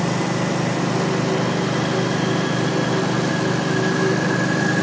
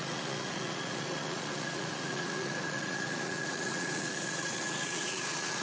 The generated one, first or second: second